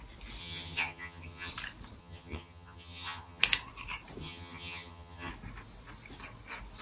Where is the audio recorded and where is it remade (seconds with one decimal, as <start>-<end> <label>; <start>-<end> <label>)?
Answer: 0.0-0.4 recorded; 0.4-1.5 remade; 1.5-2.0 recorded; 2.0-3.4 remade; 3.4-4.2 recorded; 4.2-5.3 remade; 5.3-6.8 recorded